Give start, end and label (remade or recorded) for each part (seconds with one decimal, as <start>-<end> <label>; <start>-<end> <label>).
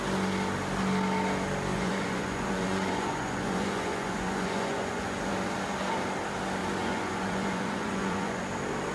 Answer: 0.0-1.7 recorded; 1.7-5.3 remade; 5.3-6.6 recorded; 6.6-8.4 remade; 8.4-8.9 recorded